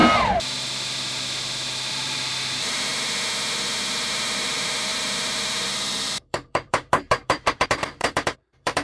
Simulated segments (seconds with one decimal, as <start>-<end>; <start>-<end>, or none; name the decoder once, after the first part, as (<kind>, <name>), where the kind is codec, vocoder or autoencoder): 1.9-2.9 (vocoder, BigVGAN v2); 4.1-8.8